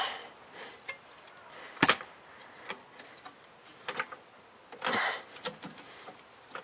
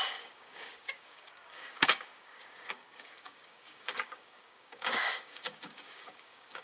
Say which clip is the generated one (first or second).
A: second